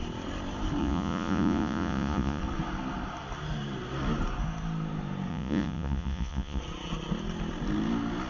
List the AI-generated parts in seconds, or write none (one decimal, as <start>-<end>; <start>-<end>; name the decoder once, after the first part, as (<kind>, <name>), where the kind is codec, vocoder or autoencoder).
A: 0.8-2.4 (vocoder, Vocos); 5.3-6.6